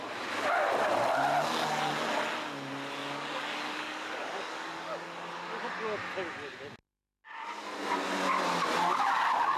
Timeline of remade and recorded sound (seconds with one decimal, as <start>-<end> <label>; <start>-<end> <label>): 0.0-3.0 recorded; 3.0-5.7 remade; 5.7-9.6 recorded